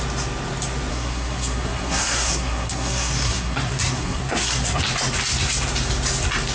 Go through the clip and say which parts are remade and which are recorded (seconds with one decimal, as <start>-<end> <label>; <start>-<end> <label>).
0.0-0.9 recorded; 0.9-4.8 remade; 4.8-6.5 recorded